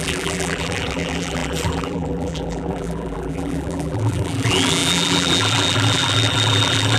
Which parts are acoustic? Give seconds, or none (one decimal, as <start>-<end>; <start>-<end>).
none